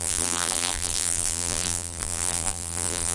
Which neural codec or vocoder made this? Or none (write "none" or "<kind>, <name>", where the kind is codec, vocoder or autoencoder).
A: vocoder, BigVGAN v2